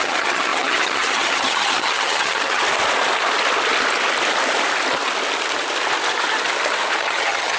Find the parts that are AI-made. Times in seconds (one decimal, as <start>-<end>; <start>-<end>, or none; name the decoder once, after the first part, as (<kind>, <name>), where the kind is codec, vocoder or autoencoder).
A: 0.0-2.6 (vocoder, HiFi-GAN); 7.0-7.6